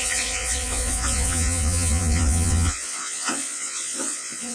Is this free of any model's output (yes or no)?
no